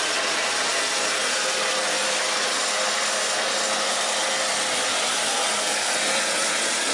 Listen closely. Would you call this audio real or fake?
real